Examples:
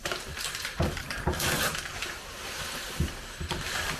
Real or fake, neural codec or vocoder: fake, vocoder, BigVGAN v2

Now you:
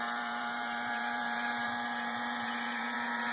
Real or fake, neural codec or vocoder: fake, vocoder, BigVGAN v2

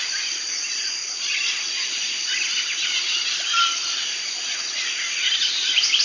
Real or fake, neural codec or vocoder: real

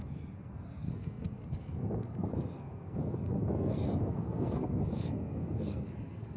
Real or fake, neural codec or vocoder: fake, codec, SNAC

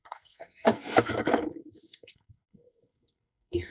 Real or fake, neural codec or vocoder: fake, codec, SNAC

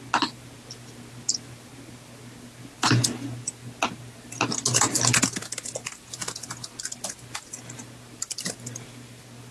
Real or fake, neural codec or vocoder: real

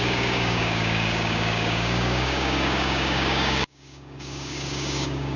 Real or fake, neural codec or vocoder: fake, codec, DAC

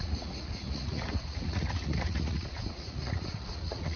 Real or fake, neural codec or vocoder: fake, vocoder, Vocos